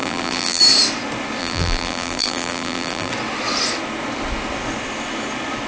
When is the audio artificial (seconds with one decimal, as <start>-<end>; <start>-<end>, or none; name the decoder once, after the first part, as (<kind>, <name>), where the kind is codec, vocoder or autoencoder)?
0.0-0.6 (vocoder, BigVGAN v2); 1.4-3.1